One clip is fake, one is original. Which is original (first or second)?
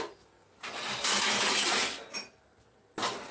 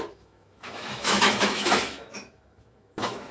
first